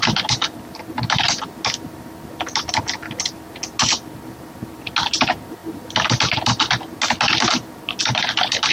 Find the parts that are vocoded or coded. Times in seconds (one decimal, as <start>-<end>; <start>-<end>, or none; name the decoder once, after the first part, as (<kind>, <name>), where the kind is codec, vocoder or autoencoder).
none

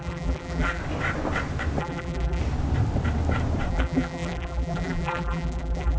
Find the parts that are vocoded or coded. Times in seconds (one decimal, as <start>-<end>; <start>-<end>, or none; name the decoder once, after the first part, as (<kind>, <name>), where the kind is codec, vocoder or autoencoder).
0.0-0.8 (vocoder, BigVGAN v2); 1.8-2.4; 3.7-6.0

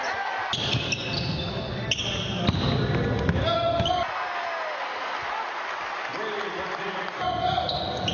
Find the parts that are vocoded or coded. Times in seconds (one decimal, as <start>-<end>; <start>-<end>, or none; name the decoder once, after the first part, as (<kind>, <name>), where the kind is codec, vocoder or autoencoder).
none